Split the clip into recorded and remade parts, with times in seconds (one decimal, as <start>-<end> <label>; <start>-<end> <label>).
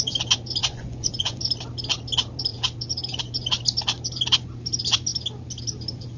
0.0-0.6 recorded; 0.6-1.4 remade; 1.4-6.2 recorded